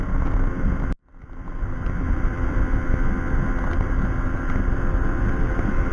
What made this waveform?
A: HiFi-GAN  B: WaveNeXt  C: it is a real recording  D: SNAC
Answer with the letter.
C